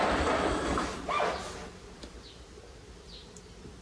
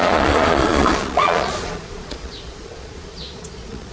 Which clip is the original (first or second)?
first